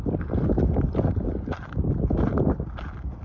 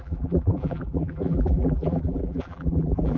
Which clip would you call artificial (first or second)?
second